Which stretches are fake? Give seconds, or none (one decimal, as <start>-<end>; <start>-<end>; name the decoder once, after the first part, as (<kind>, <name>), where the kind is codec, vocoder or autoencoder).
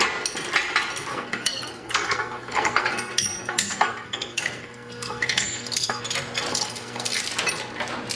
1.1-6.0 (codec, SNAC); 6.5-7.2